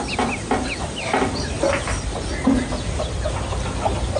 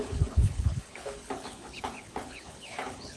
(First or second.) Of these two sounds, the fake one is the second